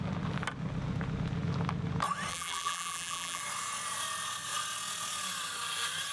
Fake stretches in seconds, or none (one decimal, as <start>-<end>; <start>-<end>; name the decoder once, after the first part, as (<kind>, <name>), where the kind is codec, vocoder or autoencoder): 2.3-3.4 (vocoder, BigVGAN v2)